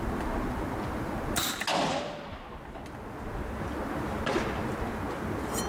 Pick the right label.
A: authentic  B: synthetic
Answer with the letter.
A